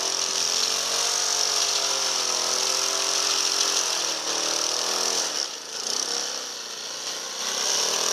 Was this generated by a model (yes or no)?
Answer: no